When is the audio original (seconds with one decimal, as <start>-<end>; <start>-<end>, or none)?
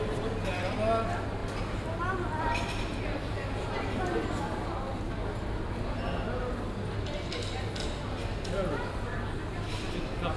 0.0-1.4; 3.7-10.4